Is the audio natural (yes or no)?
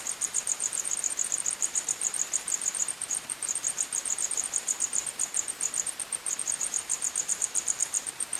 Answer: no